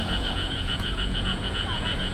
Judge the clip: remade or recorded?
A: remade